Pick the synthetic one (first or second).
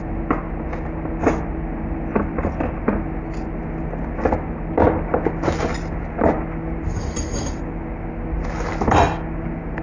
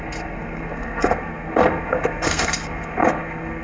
second